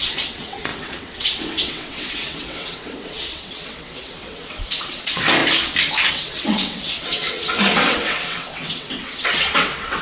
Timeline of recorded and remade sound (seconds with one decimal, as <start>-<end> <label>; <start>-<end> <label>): 0.0-5.4 remade; 5.4-6.1 recorded; 6.1-10.0 remade